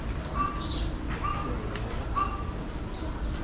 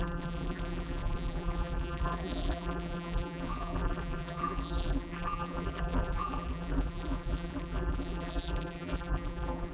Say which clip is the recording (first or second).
first